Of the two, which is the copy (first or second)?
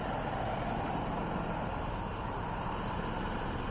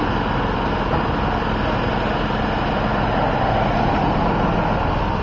first